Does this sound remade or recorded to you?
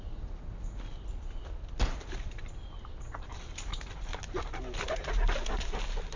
recorded